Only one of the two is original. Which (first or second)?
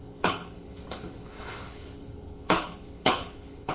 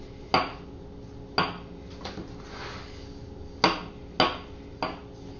second